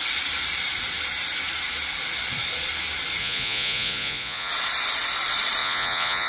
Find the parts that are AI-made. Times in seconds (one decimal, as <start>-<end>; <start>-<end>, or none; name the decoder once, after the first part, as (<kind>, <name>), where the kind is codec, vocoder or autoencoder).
3.2-4.5 (vocoder, Vocos); 5.6-6.3